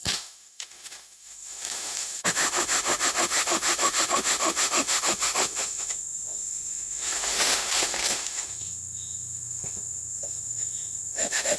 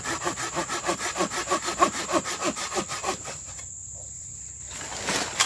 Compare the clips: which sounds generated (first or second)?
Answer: first